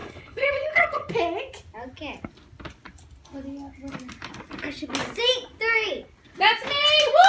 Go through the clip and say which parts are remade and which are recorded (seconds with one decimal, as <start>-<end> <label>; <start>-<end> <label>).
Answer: 0.0-1.1 remade; 1.1-7.3 recorded